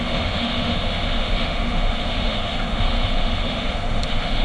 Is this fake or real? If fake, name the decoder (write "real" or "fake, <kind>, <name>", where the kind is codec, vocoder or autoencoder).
fake, autoencoder, DAC-VAE